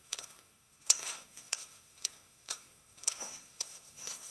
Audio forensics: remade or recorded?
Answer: remade